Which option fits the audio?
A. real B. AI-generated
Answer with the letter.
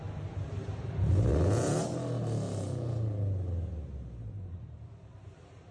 A